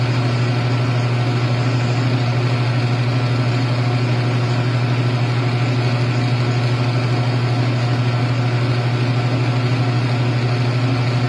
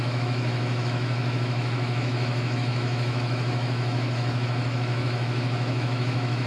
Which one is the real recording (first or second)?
first